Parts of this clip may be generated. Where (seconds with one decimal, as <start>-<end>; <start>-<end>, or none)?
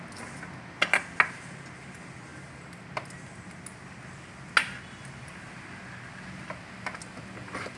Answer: none